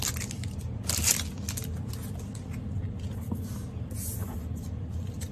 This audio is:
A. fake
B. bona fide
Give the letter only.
B